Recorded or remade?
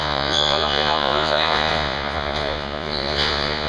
remade